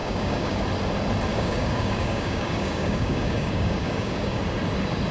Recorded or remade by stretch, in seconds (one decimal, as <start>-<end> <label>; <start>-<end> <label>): 0.0-0.6 remade; 0.6-1.3 recorded; 1.3-4.4 remade; 4.4-5.1 recorded